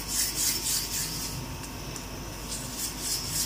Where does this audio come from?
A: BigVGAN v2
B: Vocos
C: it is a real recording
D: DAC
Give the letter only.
C